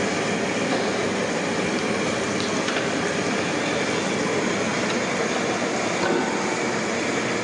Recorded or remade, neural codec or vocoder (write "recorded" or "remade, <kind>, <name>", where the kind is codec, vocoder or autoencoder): recorded